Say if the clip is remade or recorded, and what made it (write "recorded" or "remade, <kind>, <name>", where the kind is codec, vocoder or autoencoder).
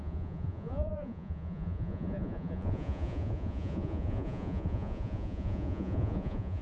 remade, vocoder, Vocos